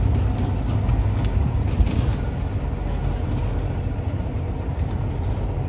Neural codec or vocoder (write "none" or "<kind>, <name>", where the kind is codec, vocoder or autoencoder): none